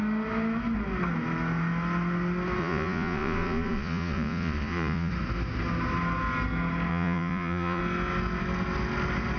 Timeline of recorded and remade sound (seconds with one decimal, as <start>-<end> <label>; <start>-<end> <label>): 0.0-2.6 recorded; 2.6-5.1 remade; 5.1-6.9 recorded; 6.9-7.8 remade; 7.8-9.4 recorded

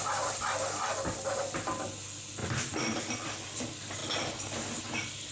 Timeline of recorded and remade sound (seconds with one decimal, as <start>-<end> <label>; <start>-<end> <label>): 0.0-2.4 recorded; 2.4-3.6 remade; 3.6-5.3 recorded

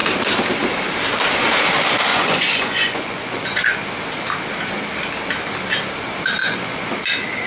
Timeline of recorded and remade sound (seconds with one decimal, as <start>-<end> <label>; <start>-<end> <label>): 0.0-2.1 recorded; 2.1-3.7 remade; 3.7-6.4 recorded; 6.4-6.9 remade; 6.9-7.5 recorded

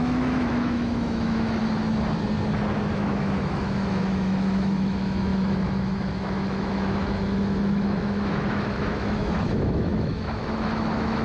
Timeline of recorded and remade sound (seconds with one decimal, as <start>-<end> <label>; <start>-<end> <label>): 0.0-1.6 remade; 1.6-2.9 recorded; 2.9-11.2 remade

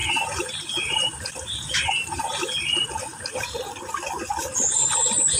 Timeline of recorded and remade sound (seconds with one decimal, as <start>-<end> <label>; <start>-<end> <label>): 0.0-2.6 remade; 2.6-5.4 recorded